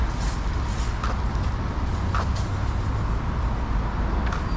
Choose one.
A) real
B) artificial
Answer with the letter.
A